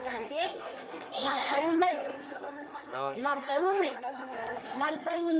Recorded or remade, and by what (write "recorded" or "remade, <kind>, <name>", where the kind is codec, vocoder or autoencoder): remade, codec, SNAC